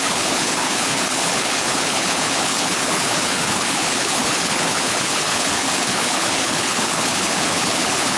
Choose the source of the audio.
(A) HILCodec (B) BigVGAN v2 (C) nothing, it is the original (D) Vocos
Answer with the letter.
A